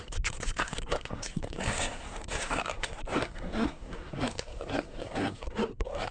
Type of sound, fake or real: fake